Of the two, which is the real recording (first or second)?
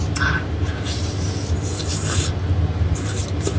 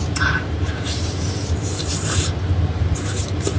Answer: first